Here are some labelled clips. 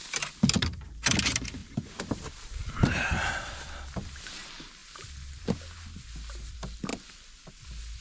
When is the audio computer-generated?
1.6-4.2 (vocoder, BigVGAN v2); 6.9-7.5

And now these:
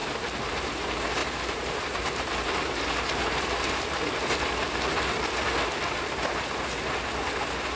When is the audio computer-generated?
1.2-3.8 (vocoder, BigVGAN v2)

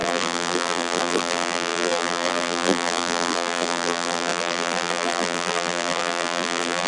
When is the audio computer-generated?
0.0-6.9 (vocoder, BigVGAN v2)

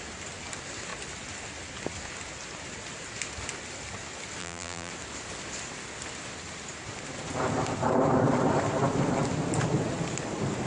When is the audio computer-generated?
4.4-4.9 (vocoder, BigVGAN v2)

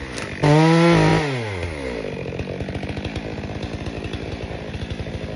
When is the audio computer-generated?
none